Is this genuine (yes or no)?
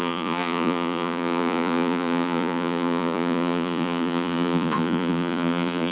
no